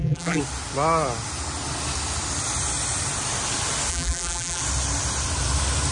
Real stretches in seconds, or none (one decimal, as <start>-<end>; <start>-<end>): 0.4-3.9; 4.6-5.9